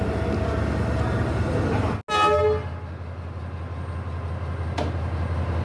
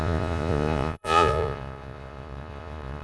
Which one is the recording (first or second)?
first